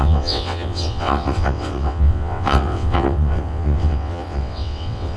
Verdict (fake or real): fake